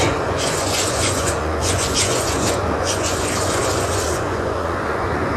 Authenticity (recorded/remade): remade